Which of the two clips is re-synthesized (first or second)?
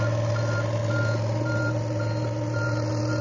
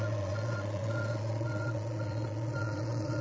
second